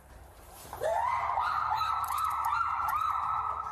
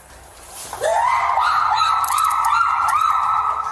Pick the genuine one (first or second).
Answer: second